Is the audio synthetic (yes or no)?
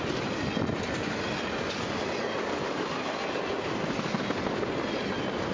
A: no